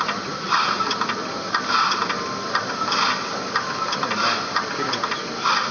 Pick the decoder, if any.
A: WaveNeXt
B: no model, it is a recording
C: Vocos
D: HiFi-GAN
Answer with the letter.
B